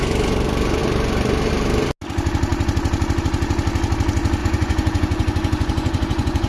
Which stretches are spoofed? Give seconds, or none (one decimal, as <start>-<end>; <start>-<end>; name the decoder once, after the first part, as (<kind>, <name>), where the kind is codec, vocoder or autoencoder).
4.4-6.5 (vocoder, Vocos)